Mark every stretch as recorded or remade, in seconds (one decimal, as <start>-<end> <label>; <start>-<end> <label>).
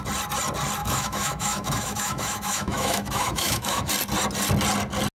0.0-0.8 recorded; 0.8-3.9 remade; 3.9-5.2 recorded